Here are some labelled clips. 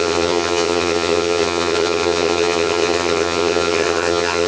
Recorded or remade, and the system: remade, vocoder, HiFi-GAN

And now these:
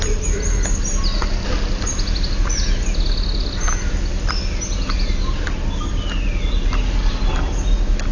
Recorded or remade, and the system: recorded